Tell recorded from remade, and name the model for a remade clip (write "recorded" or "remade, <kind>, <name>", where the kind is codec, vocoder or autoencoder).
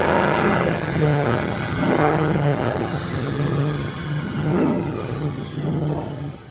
remade, vocoder, HiFi-GAN